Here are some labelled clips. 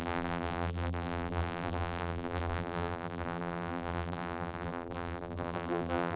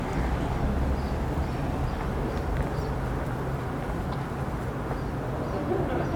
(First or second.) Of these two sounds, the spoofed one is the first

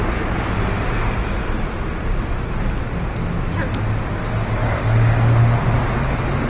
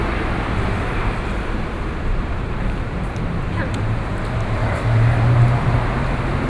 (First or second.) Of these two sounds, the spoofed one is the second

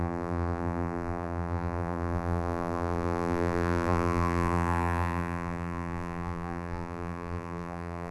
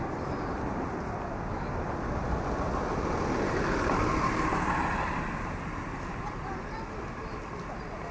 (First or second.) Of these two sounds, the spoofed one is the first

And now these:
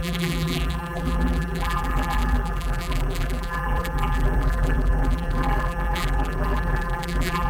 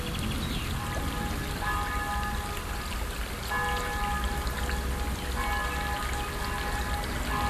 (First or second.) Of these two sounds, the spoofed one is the first